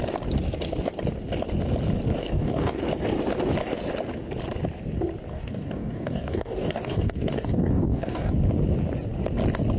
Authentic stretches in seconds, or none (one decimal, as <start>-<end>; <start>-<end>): 0.0-2.2; 2.8-5.3; 8.3-9.8